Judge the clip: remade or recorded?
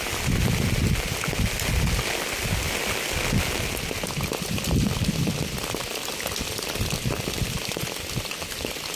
recorded